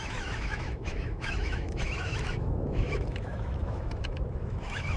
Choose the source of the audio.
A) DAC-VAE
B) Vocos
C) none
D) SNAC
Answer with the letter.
A